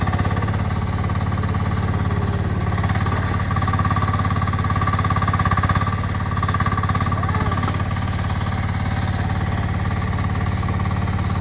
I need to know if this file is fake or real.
real